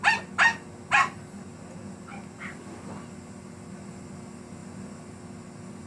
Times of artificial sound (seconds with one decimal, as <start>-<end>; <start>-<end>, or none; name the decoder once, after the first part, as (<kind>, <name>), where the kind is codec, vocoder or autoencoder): none